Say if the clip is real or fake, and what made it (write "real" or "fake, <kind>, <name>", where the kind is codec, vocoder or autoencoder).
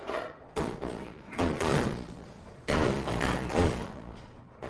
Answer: fake, vocoder, Vocos